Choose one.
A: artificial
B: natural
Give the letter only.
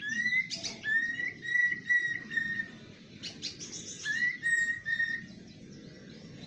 B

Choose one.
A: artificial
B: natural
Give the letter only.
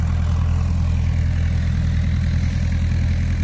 B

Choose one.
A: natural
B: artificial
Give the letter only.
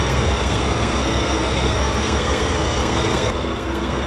B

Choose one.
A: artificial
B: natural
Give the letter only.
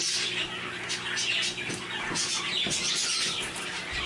B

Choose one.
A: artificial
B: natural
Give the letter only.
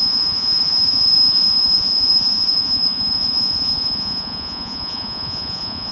A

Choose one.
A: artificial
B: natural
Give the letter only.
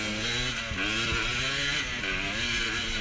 B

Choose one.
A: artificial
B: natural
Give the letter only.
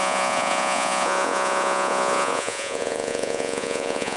A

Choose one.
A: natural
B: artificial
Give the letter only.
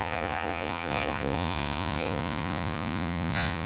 B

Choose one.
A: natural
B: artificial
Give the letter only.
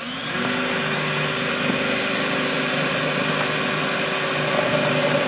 A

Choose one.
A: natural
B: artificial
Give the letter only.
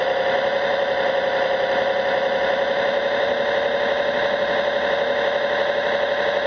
A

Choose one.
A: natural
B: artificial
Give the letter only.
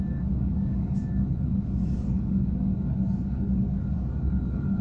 B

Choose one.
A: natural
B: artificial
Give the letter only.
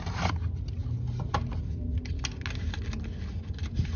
A